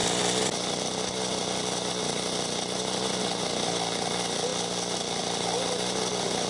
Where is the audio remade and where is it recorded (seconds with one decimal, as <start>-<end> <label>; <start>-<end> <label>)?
0.0-6.5 recorded